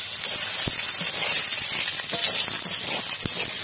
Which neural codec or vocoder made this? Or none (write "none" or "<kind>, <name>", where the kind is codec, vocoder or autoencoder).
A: none